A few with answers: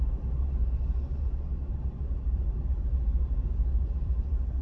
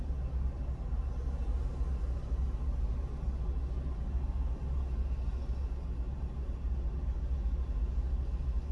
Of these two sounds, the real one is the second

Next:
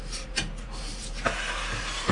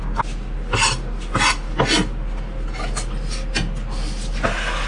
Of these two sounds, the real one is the second